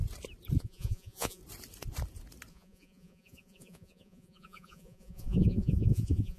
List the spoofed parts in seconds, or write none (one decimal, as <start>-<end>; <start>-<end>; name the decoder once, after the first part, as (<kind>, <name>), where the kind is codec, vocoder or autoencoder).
0.6-1.4 (vocoder, Vocos); 2.5-6.4